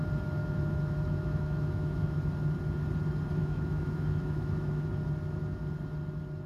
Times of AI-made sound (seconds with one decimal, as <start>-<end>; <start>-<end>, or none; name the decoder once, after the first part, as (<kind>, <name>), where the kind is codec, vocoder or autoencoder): 0.4-2.2 (autoencoder, DAC-VAE); 3.4-4.9